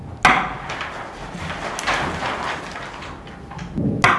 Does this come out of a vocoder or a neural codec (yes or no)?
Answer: no